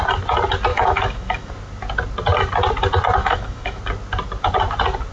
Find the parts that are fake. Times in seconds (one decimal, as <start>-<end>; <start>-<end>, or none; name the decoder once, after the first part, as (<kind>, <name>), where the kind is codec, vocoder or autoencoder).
0.7-1.5 (autoencoder, DAC-VAE); 3.2-3.8